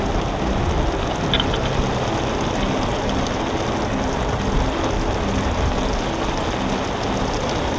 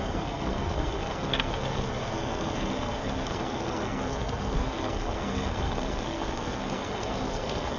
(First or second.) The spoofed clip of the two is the second